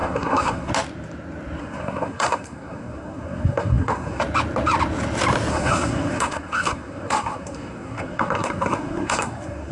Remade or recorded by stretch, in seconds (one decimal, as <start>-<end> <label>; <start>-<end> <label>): 0.0-0.7 remade; 0.7-1.6 recorded; 1.6-4.2 remade; 4.2-5.5 recorded; 5.5-9.7 remade